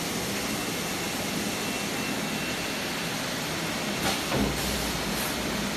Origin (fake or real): real